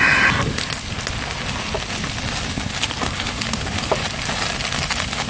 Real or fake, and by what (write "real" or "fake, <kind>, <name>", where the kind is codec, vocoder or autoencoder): real